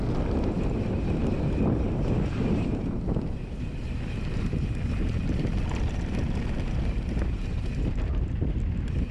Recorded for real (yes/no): yes